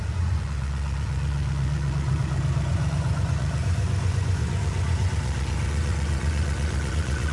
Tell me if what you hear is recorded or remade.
remade